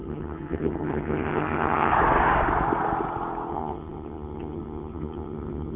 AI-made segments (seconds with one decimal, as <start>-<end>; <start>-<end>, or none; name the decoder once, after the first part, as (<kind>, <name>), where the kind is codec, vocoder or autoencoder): 0.0-1.9 (vocoder, HiFi-GAN); 3.5-5.8